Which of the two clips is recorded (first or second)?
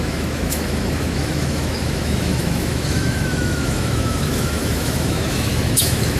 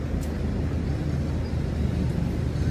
second